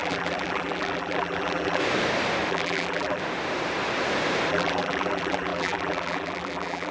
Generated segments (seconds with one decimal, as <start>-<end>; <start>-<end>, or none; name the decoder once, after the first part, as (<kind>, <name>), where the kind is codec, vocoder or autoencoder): 0.0-1.8 (vocoder, BigVGAN v2); 2.5-3.2; 4.5-6.9